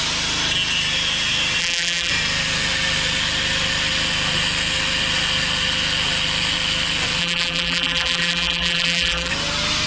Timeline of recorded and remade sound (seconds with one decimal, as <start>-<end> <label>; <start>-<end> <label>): 0.0-1.6 recorded; 1.6-2.1 remade; 2.1-7.2 recorded; 7.2-9.3 remade; 9.3-9.9 recorded